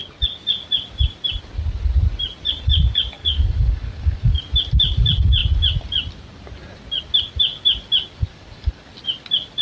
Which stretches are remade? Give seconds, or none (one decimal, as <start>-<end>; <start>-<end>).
3.2-4.4; 8.3-8.9